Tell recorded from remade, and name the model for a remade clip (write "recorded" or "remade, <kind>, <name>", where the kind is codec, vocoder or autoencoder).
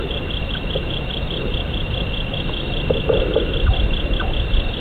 recorded